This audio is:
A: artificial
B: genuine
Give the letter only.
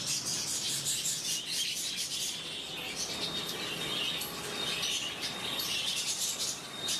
B